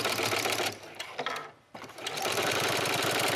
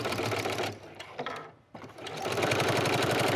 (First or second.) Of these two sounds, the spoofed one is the second